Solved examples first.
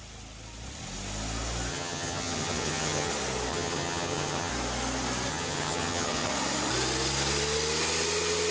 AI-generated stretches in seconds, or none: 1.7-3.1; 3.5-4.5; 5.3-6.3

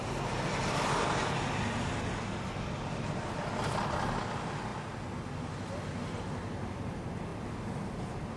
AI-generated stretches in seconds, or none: none

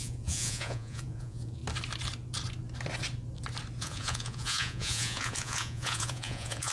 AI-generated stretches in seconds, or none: 0.0-1.6; 3.8-6.7

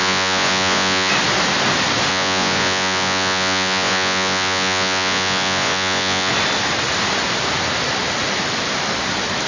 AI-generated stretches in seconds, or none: 0.0-1.1; 2.1-6.3

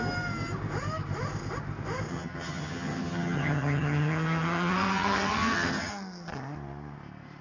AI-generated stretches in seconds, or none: 2.1-5.9

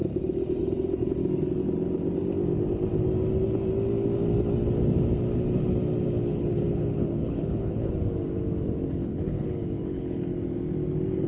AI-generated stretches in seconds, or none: 6.3-7.9; 9.0-10.0

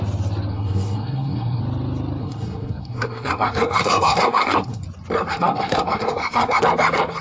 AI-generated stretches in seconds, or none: 0.5-1.6; 2.2-4.8; 5.3-6.6

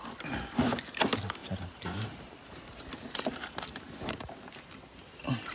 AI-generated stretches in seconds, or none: 1.4-4.7